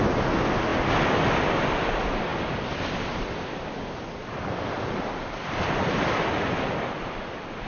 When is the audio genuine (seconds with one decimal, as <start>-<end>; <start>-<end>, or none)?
0.0-0.7; 1.3-2.3; 6.4-7.7